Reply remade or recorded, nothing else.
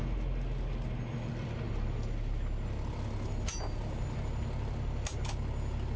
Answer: recorded